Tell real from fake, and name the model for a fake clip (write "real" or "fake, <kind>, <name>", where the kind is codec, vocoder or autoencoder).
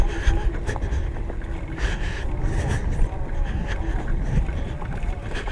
real